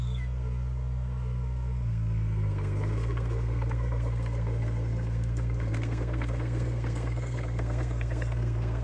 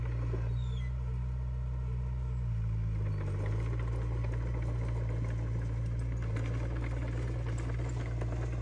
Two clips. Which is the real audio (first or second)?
second